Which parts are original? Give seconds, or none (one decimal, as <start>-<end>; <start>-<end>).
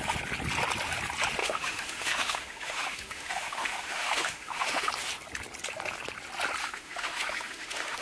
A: 0.0-1.4; 4.9-6.6